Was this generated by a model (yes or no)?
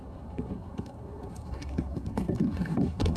yes